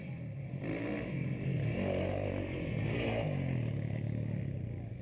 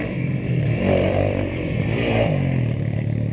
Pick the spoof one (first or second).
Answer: second